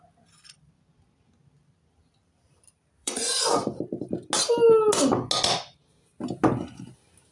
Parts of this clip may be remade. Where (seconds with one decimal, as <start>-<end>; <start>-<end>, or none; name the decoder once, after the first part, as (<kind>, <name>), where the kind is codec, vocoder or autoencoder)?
3.0-3.8 (vocoder, Vocos)